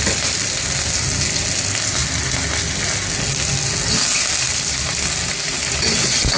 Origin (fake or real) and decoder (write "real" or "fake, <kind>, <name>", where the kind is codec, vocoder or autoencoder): real